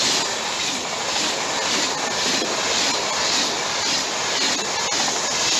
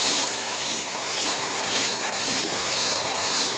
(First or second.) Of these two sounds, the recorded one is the first